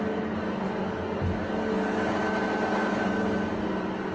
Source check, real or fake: real